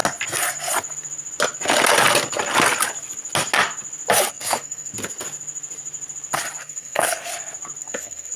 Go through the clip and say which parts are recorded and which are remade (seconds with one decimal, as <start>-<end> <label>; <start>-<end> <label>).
0.0-4.3 recorded; 4.3-4.9 remade; 4.9-6.6 recorded; 6.6-7.3 remade; 7.3-7.8 recorded; 7.8-8.4 remade